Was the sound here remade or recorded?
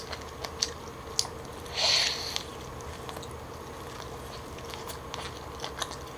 recorded